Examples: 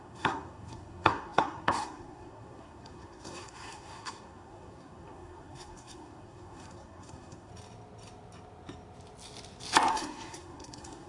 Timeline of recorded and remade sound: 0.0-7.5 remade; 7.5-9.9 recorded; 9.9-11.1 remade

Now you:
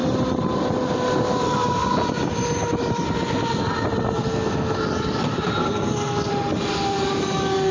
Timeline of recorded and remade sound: 0.0-4.2 recorded; 4.2-4.8 remade; 4.8-5.6 recorded; 5.6-6.3 remade; 6.3-7.7 recorded

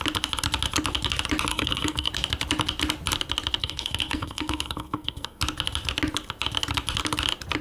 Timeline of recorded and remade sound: 0.0-1.5 recorded; 1.5-2.1 remade; 2.1-3.6 recorded; 3.6-5.4 remade; 5.4-7.6 recorded

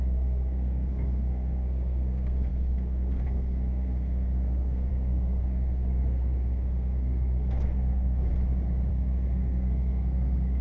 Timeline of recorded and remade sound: 0.0-8.3 remade; 8.3-8.9 recorded; 8.9-10.6 remade

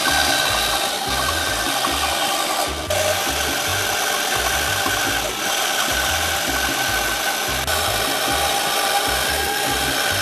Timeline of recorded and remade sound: 0.0-10.2 recorded

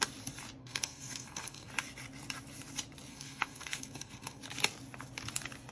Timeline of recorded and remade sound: 0.0-0.6 recorded; 0.6-1.7 remade; 1.7-3.1 recorded; 3.1-4.4 remade; 4.4-5.7 recorded